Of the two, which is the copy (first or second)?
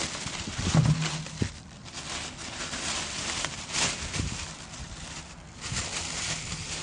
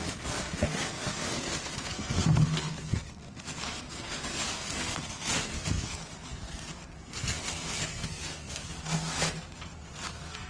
second